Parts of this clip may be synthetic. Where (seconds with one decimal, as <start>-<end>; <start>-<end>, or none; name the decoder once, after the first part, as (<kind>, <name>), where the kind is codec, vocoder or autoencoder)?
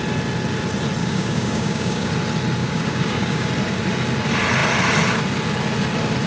1.0-2.1 (codec, DAC); 2.6-3.5